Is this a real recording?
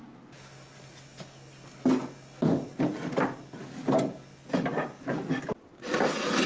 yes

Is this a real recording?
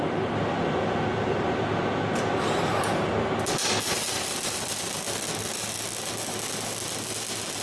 yes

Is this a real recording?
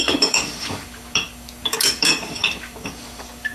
no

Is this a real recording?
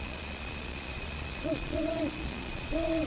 no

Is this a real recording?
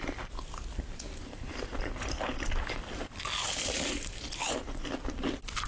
no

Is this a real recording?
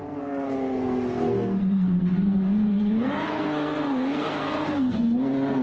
no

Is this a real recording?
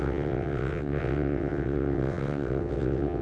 no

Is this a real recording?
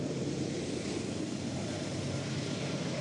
no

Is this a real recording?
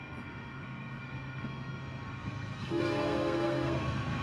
no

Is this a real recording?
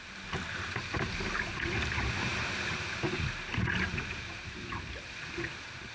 yes